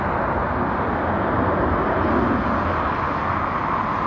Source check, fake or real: real